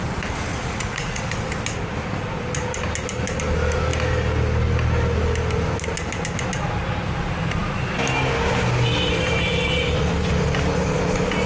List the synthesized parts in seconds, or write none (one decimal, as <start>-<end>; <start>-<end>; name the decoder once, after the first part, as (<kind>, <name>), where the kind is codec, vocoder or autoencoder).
0.5-1.2 (vocoder, Vocos)